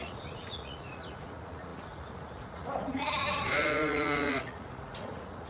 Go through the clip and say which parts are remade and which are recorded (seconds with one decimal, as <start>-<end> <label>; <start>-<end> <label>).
0.0-5.5 remade